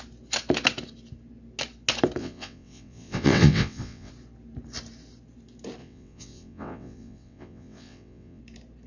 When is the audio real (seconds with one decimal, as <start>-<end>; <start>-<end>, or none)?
0.0-2.2; 4.1-5.8; 8.4-8.9